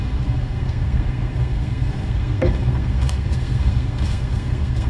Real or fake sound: fake